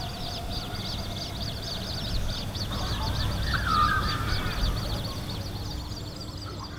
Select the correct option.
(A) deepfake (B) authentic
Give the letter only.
B